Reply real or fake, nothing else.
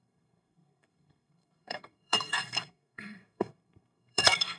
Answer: fake